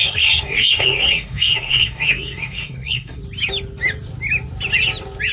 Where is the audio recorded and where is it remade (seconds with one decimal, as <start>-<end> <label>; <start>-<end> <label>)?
0.0-3.2 remade; 3.2-5.3 recorded